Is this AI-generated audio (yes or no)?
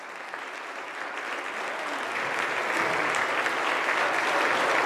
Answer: no